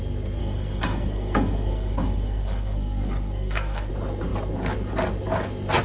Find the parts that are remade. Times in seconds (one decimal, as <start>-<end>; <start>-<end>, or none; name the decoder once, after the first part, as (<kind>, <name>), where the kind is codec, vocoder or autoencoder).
0.4-3.9 (codec, SNAC)